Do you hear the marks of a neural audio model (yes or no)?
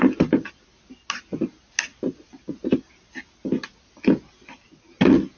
no